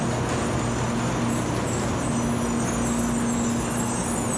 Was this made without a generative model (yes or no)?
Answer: yes